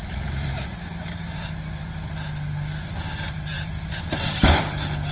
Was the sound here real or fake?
fake